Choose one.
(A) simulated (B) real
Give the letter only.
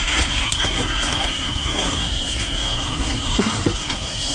A